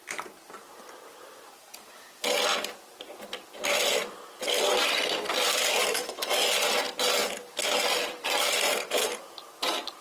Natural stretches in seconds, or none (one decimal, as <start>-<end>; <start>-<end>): 0.0-10.0